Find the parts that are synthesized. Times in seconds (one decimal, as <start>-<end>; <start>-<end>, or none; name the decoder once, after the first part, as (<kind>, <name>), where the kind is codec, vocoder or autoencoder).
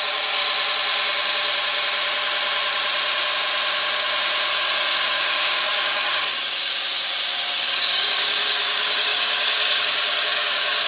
0.0-0.4 (codec, DAC); 4.5-10.9